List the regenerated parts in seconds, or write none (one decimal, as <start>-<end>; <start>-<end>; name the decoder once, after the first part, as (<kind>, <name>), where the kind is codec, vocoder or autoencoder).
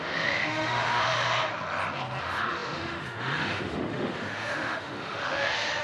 0.0-1.5 (autoencoder, DAC-VAE); 2.2-5.8